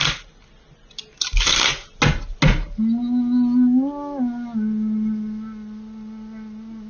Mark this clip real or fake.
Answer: real